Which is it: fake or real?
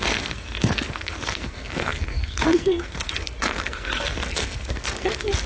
fake